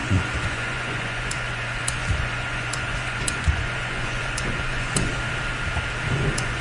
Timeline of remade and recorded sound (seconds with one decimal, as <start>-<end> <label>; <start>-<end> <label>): 0.0-5.1 remade; 5.1-6.1 recorded; 6.1-6.6 remade